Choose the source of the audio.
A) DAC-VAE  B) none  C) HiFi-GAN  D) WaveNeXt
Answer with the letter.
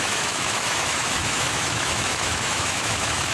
A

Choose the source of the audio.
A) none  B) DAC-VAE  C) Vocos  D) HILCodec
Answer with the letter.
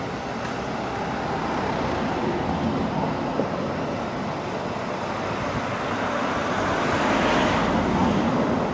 A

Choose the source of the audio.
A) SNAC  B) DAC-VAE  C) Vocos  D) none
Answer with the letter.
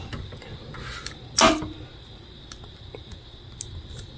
D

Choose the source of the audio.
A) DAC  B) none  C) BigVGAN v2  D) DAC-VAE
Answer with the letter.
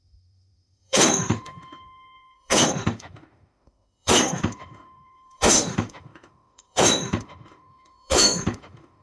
D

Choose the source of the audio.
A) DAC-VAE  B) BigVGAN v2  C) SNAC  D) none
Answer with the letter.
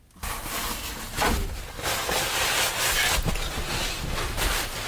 D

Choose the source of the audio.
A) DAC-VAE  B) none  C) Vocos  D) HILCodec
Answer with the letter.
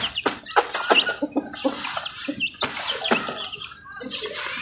B